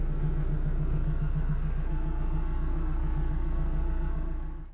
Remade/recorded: remade